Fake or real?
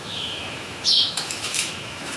fake